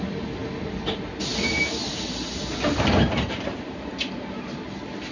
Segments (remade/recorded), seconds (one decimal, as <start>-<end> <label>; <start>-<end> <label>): 0.0-5.1 recorded